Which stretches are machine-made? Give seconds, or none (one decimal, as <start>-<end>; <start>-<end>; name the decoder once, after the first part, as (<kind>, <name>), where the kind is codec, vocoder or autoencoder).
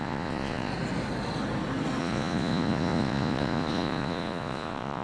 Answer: 0.0-0.7 (vocoder, Vocos); 2.0-5.0